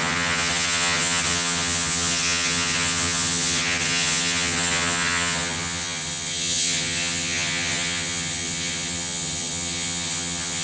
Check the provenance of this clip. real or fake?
fake